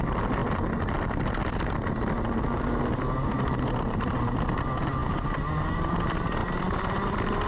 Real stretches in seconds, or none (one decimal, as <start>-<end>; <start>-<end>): 0.0-7.5